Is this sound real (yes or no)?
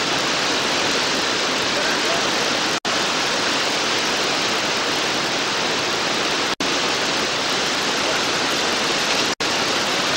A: yes